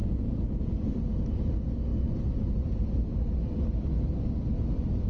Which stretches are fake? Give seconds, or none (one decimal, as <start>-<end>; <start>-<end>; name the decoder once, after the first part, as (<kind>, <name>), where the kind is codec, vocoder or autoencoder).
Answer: 0.0-0.7 (vocoder, Vocos)